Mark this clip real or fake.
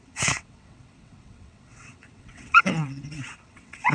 fake